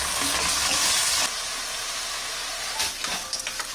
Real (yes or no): yes